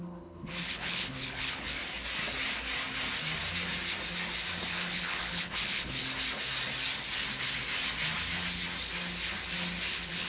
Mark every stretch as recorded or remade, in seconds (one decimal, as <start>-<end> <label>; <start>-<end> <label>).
0.0-1.8 remade; 1.8-4.7 recorded; 4.7-6.0 remade; 6.0-9.9 recorded; 9.9-10.3 remade